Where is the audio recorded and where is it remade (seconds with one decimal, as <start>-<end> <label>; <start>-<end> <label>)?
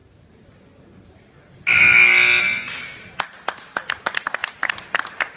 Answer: 0.0-5.4 recorded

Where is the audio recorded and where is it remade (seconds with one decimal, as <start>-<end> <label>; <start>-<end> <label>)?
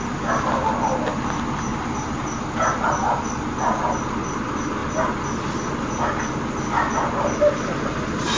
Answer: 0.0-8.4 recorded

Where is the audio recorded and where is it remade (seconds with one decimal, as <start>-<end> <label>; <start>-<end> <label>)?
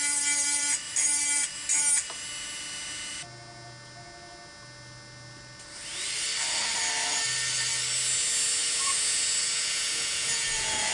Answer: 0.0-8.6 recorded; 8.6-10.9 remade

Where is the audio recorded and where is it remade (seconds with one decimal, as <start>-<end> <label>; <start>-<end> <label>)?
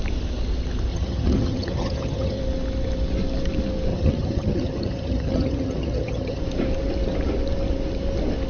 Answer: 0.0-0.9 recorded; 0.9-2.4 remade; 2.4-3.9 recorded; 3.9-6.4 remade; 6.4-8.5 recorded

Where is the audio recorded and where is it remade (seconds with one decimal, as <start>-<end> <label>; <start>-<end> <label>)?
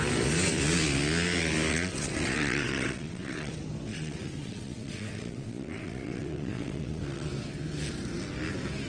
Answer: 0.0-1.7 recorded; 1.7-3.5 remade; 3.5-3.9 recorded; 3.9-7.3 remade; 7.3-8.9 recorded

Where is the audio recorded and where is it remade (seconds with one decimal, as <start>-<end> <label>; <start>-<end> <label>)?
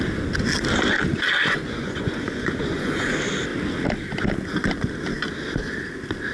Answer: 0.0-1.4 recorded; 1.4-3.1 remade; 3.1-6.3 recorded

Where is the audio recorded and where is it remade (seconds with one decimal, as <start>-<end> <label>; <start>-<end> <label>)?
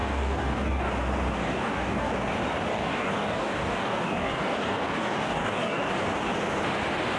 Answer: 0.0-0.9 remade; 0.9-1.4 recorded; 1.4-2.1 remade; 2.1-2.7 recorded; 2.7-5.9 remade; 5.9-7.2 recorded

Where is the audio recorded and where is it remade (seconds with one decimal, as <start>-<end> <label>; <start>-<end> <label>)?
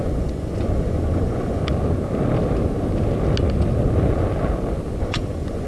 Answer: 0.0-1.6 remade; 1.6-5.0 recorded; 5.0-5.7 remade